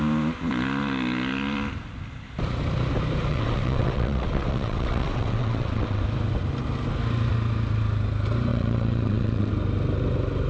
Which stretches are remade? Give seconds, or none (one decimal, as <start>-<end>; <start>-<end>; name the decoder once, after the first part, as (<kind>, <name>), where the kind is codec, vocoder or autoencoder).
3.3-6.0 (vocoder, WaveNeXt); 8.5-9.5